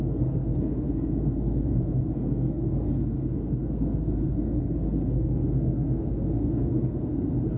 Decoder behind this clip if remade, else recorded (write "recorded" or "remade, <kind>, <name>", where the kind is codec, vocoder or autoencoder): remade, codec, SNAC